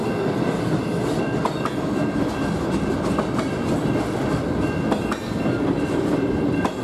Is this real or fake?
real